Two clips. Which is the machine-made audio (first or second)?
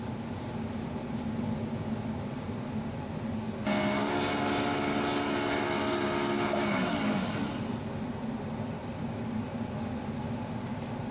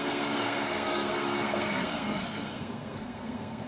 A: second